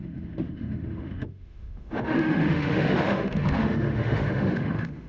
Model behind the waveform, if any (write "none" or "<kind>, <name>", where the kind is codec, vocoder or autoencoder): autoencoder, DAC-VAE